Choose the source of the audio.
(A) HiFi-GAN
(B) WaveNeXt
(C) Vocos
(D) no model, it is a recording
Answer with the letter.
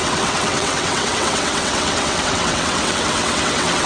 B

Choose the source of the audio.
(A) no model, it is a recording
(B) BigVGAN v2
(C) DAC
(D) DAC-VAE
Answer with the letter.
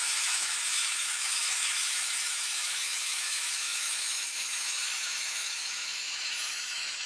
D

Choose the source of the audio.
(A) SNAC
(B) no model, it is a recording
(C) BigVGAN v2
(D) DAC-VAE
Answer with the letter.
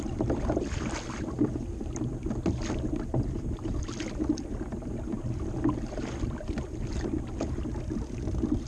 B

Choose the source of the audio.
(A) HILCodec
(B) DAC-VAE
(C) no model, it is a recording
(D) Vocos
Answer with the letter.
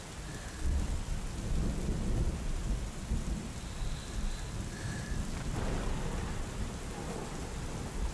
C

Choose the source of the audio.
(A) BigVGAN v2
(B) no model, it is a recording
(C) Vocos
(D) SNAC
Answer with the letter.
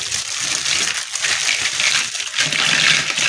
B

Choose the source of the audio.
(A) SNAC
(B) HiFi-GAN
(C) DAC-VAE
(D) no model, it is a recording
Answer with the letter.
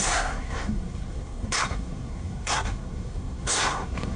A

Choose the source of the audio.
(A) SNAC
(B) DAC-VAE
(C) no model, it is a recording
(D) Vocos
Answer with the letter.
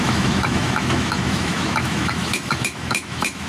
B